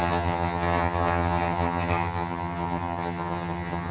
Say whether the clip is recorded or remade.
remade